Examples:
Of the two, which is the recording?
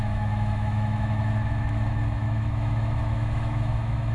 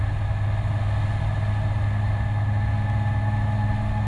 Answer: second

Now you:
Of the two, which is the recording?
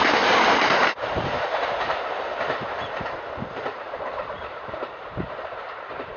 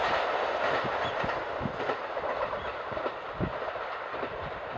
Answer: second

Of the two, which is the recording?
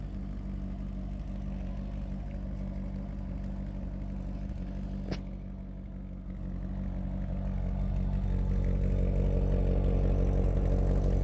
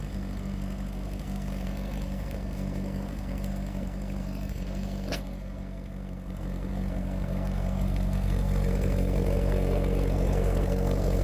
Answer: first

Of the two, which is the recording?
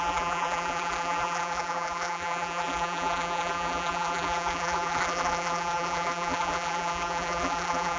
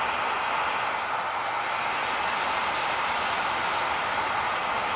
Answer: second